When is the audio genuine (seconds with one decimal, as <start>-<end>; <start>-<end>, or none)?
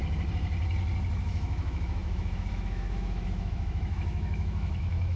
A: 0.0-1.2